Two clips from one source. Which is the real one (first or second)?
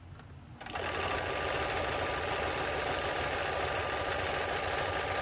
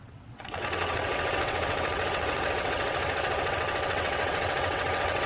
first